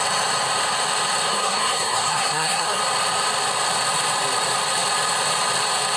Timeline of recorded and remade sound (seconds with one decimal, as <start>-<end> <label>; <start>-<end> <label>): 0.0-1.3 recorded; 1.3-2.8 remade; 2.8-6.0 recorded